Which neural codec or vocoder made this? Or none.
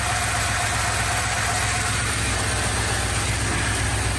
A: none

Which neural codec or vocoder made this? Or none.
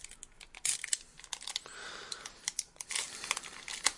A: none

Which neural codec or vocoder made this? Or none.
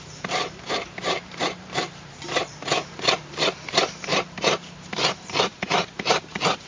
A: vocoder, BigVGAN v2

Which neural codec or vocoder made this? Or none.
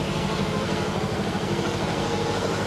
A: codec, SNAC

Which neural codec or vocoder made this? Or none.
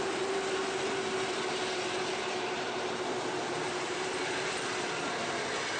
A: vocoder, BigVGAN v2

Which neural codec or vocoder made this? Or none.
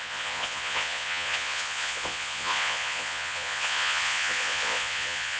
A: vocoder, Vocos